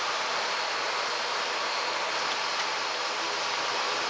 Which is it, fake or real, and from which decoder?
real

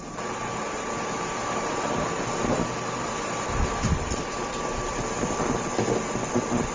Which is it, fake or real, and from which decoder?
real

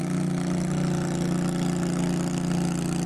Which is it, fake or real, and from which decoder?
real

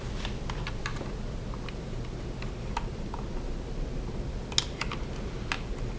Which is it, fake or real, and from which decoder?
real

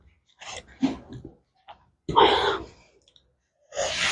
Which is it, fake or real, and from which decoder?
real